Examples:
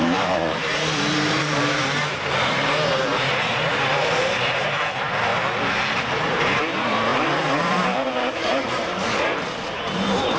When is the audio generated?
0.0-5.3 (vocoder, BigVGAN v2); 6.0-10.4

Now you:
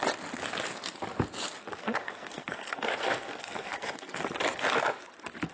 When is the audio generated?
1.8-4.2 (codec, SNAC)

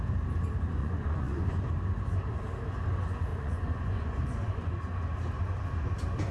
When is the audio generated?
0.8-1.6 (vocoder, Vocos); 3.3-4.7

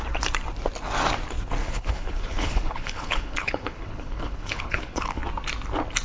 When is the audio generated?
1.6-5.2 (codec, HILCodec)